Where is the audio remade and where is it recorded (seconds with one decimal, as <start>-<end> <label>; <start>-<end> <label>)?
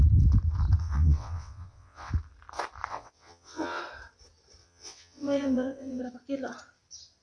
0.0-0.8 recorded; 0.8-2.1 remade; 2.1-2.9 recorded; 2.9-3.8 remade; 3.8-4.6 recorded; 4.6-6.0 remade; 6.0-7.2 recorded